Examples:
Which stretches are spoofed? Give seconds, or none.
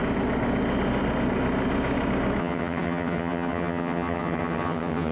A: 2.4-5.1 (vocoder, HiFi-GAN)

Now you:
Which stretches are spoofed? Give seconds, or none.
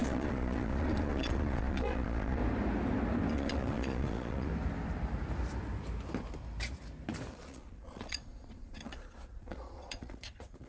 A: 0.0-2.4 (vocoder, Vocos); 3.3-4.5; 7.3-10.7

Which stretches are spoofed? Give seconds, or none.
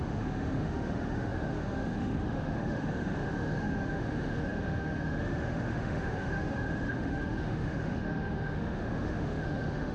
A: 0.0-9.9 (autoencoder, DAC-VAE)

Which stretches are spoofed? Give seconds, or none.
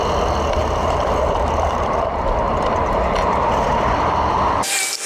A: 0.6-3.7 (vocoder, BigVGAN v2)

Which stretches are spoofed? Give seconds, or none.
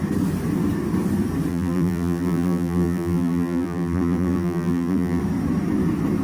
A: 1.5-5.2 (vocoder, BigVGAN v2)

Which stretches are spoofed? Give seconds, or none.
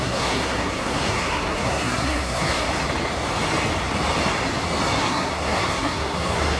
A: 0.0-2.7 (codec, SNAC); 5.0-6.6